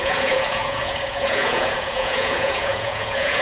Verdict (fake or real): fake